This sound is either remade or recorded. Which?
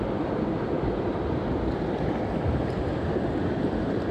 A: remade